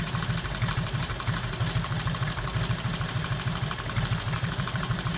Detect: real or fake fake